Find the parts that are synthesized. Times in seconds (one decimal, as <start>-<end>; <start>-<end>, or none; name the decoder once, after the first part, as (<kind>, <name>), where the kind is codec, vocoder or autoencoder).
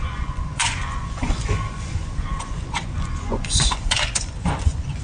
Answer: 0.0-5.0 (vocoder, Vocos)